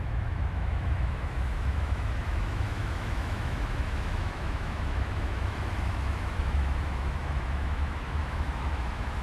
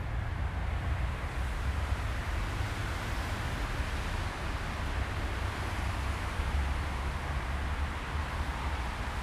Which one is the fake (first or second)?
first